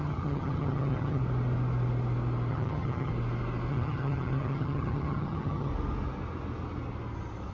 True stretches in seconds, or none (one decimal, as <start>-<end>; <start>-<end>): 1.2-2.5; 3.1-3.7; 5.7-7.5